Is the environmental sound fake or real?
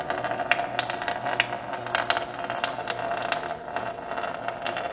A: real